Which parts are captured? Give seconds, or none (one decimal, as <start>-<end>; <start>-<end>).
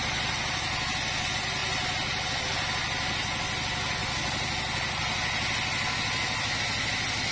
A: 0.0-7.3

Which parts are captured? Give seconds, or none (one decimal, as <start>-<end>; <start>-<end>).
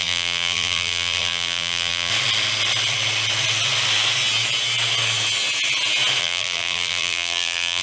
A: 2.1-6.2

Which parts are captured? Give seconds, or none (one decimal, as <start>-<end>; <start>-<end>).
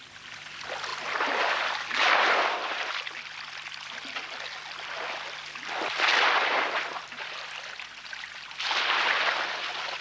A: 0.0-10.0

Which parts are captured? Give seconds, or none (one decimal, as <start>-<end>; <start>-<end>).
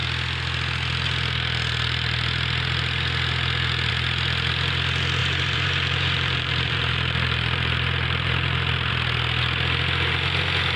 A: 0.0-5.2; 8.9-10.8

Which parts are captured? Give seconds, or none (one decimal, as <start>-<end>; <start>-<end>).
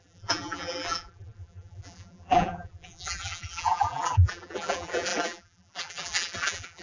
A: none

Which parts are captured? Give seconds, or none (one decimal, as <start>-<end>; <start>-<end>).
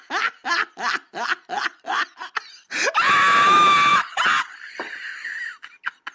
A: 0.0-6.1